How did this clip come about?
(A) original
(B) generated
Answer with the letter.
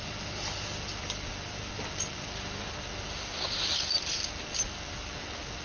A